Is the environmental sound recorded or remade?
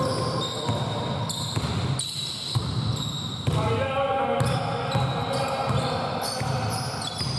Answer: recorded